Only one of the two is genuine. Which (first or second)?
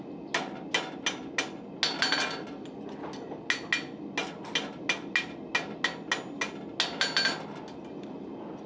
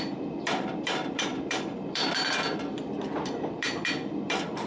first